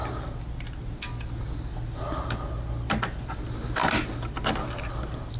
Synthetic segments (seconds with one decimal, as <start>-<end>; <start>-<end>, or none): none